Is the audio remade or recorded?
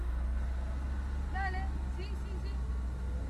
recorded